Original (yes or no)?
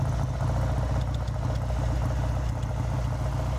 yes